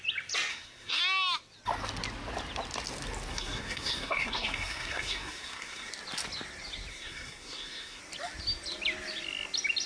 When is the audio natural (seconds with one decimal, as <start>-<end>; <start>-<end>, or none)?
0.0-0.5; 1.0-3.3; 5.9-6.9; 8.0-9.9